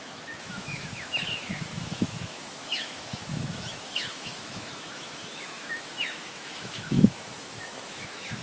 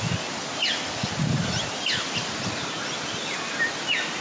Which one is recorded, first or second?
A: second